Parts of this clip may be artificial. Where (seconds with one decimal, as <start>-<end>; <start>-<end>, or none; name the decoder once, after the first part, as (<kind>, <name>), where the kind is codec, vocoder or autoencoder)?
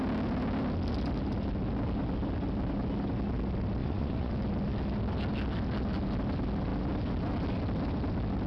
3.8-4.3 (vocoder, Vocos)